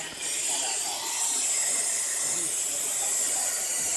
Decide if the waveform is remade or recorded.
recorded